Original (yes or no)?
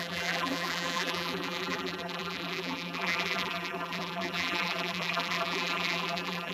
no